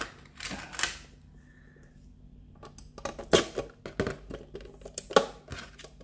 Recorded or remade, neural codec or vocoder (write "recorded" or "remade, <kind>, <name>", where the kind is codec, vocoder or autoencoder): recorded